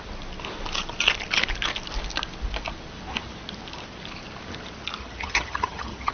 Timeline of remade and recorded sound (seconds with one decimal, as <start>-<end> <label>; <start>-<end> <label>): 0.0-5.0 recorded; 5.0-6.1 remade